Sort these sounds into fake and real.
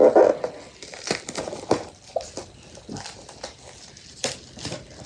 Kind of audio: real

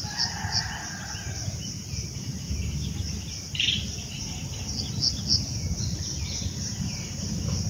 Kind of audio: real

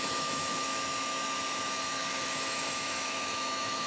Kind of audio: fake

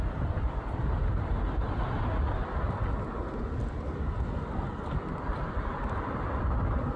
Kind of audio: real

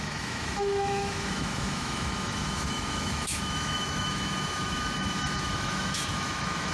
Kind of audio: fake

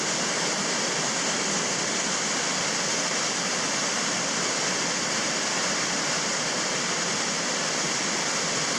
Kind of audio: real